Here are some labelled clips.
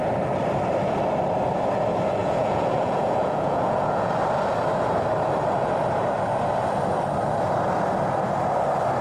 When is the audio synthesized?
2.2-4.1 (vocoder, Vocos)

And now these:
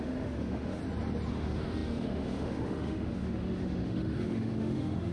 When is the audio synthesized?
0.0-0.8 (autoencoder, DAC-VAE); 1.3-5.1

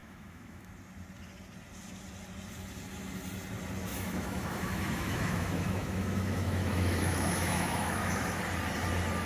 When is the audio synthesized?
0.0-0.7 (autoencoder, DAC-VAE); 3.9-8.4

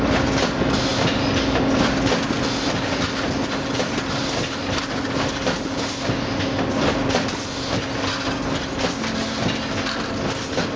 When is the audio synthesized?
none